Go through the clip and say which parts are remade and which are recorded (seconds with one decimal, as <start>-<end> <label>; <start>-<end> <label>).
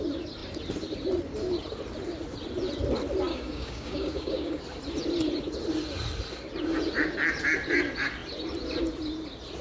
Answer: 0.0-3.3 recorded; 3.3-4.6 remade; 4.6-9.6 recorded